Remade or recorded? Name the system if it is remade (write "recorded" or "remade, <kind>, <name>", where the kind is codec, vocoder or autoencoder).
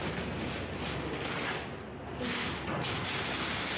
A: recorded